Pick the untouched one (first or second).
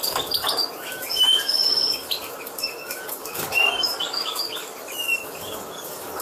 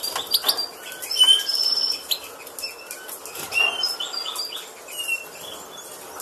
second